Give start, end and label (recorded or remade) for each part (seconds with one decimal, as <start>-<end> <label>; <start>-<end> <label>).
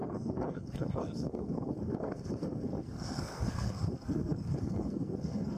0.0-5.6 remade